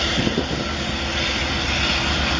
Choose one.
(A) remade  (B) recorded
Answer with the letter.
B